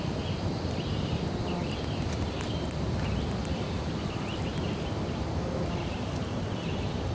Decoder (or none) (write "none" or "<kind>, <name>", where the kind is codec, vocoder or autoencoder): none